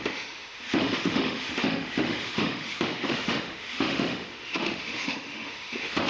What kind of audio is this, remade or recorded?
remade